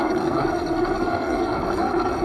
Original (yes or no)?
no